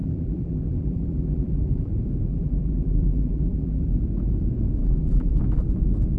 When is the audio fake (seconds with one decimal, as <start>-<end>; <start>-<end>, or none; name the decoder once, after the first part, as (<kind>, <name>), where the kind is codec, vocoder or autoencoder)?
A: 0.0-1.9 (vocoder, BigVGAN v2); 2.3-3.9; 4.8-5.4